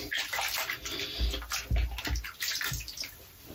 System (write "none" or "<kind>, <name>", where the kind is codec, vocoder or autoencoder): none